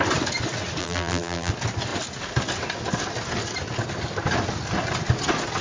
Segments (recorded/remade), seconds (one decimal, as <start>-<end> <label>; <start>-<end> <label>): 0.0-0.8 recorded; 0.8-1.5 remade; 1.5-5.6 recorded